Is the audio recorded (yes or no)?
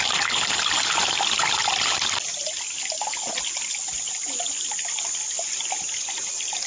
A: yes